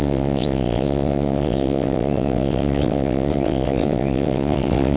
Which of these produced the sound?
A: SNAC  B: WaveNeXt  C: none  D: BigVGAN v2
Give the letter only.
B